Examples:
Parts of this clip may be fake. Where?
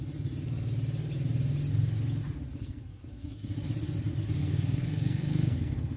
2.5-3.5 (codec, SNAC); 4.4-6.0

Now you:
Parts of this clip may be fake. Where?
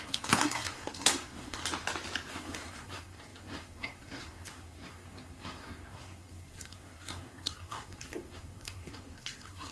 0.0-1.6 (codec, SNAC); 2.3-9.7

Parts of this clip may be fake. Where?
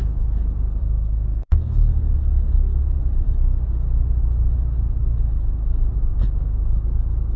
0.8-1.9 (codec, SNAC)